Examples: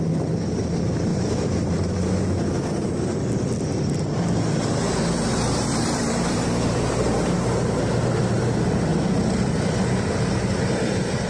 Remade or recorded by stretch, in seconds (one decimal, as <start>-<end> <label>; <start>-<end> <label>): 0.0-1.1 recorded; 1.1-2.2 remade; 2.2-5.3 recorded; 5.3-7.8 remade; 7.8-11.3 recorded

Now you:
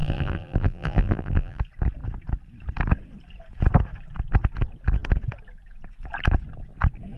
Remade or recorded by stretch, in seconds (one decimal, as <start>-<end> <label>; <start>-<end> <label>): 0.0-1.6 remade; 1.6-7.2 recorded

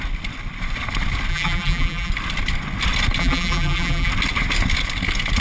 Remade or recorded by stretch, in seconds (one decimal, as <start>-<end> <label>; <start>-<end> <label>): 0.0-1.3 recorded; 1.3-2.1 remade; 2.1-3.2 recorded; 3.2-4.1 remade; 4.1-5.4 recorded

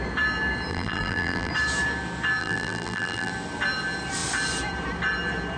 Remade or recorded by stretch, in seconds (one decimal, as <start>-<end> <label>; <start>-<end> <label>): 0.0-0.7 recorded; 0.7-1.5 remade; 1.5-2.4 recorded; 2.4-3.3 remade; 3.3-5.6 recorded